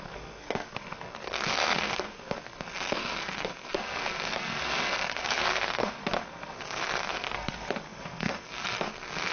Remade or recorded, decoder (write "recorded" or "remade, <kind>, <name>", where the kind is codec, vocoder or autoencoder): remade, codec, SNAC